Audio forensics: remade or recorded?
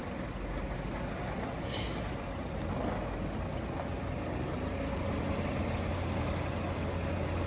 recorded